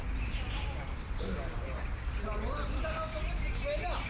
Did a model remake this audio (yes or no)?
no